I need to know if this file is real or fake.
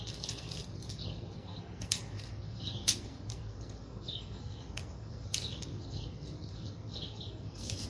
fake